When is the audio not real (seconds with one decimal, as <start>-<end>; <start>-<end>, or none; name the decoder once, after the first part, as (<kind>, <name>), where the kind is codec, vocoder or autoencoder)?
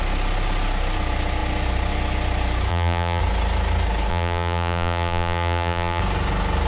2.7-3.2 (vocoder, BigVGAN v2); 4.1-6.0